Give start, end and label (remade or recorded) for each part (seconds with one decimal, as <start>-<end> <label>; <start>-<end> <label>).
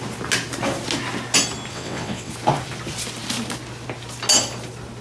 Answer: 0.0-1.7 recorded; 1.7-2.3 remade; 2.3-5.0 recorded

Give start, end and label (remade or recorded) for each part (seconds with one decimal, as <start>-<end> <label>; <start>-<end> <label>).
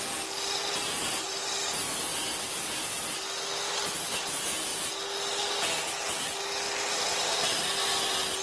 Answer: 0.0-8.4 recorded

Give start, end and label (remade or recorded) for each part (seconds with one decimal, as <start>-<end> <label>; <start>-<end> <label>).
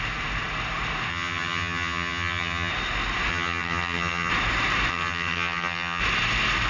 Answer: 0.0-1.1 recorded; 1.1-2.7 remade; 2.7-3.3 recorded; 3.3-4.3 remade; 4.3-4.9 recorded; 4.9-6.0 remade; 6.0-6.7 recorded